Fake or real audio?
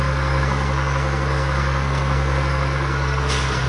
fake